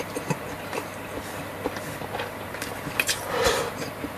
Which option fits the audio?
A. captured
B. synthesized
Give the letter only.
B